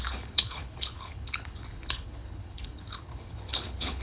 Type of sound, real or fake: fake